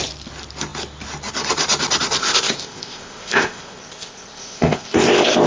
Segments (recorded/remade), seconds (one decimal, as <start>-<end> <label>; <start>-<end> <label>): 0.0-2.2 recorded; 2.2-5.5 remade